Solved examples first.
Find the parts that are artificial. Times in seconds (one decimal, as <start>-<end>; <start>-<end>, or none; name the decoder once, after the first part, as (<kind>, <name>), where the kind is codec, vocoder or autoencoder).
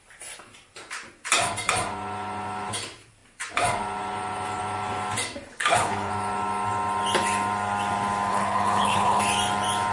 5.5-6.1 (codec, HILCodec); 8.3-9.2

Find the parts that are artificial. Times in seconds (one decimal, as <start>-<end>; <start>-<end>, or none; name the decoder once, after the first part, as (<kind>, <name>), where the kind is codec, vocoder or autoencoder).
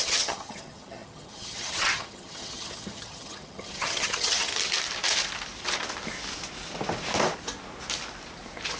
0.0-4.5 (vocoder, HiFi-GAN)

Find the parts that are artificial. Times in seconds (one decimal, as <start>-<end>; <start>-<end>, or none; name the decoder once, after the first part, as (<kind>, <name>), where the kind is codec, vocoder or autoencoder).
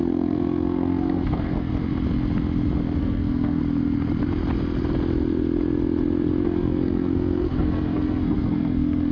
0.0-1.7 (codec, SNAC); 3.0-3.6; 6.4-9.1